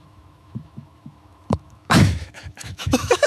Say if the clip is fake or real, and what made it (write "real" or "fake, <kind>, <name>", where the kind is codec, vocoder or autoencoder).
fake, autoencoder, DAC-VAE